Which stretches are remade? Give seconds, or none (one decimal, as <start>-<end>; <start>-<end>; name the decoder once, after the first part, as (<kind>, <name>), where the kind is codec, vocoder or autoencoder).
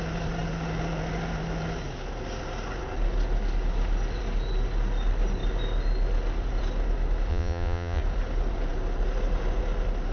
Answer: 7.3-8.0 (vocoder, Vocos)